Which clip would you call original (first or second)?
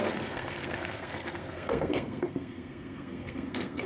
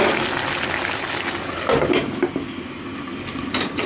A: second